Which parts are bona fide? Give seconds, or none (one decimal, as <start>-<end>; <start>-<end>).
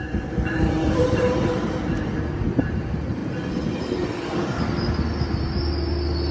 2.1-2.6; 3.2-6.3